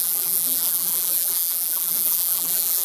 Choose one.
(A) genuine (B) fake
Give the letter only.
B